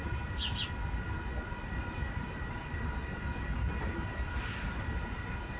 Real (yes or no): yes